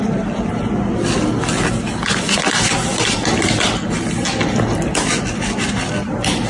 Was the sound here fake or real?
real